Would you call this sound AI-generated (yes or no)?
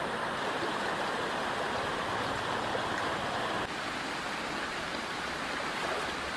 no